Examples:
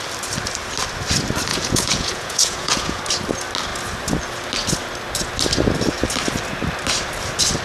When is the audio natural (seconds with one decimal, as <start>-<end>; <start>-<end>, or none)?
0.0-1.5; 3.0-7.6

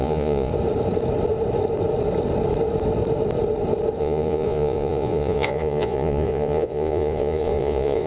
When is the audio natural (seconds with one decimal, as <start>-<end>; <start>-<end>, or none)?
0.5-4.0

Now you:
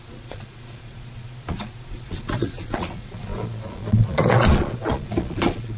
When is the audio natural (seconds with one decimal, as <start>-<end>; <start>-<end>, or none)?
none

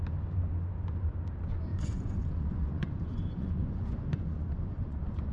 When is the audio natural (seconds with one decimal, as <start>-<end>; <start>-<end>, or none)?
0.0-1.7